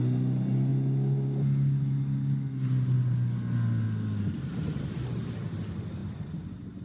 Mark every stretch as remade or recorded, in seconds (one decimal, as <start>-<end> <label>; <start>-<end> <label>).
0.0-6.8 recorded

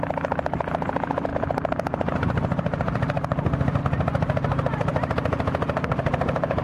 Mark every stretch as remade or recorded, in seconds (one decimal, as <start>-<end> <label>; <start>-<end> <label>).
0.0-6.6 remade

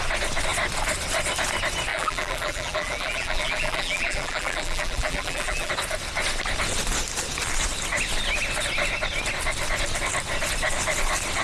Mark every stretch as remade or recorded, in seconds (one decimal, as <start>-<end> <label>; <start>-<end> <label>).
0.0-1.9 recorded; 1.9-5.7 remade; 5.7-11.4 recorded

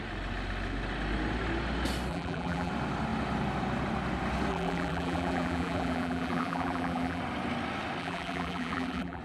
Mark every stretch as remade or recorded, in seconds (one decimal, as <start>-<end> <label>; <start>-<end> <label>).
0.0-2.1 recorded; 2.1-2.7 remade; 2.7-4.5 recorded; 4.5-7.2 remade; 7.2-8.0 recorded; 8.0-9.2 remade